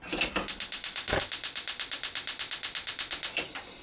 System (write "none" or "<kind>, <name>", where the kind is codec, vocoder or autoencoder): none